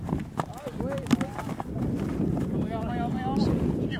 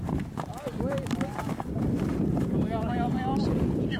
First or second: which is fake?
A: second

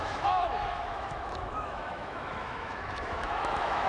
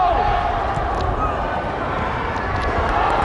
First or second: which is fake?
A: first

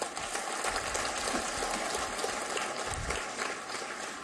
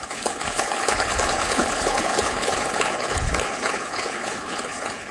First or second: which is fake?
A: second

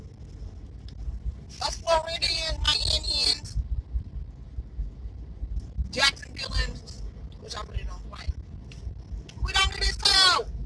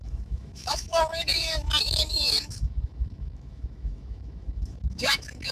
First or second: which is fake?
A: second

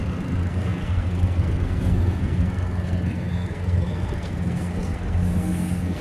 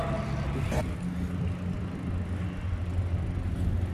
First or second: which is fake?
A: first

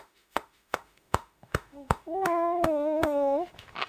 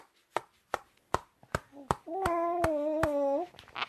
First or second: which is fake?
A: first